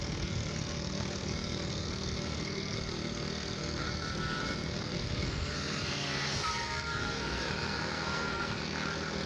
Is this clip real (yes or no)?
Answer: no